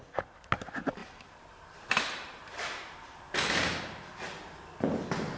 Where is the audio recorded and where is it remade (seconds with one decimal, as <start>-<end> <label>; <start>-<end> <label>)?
0.0-1.0 recorded; 1.0-4.2 remade; 4.2-5.4 recorded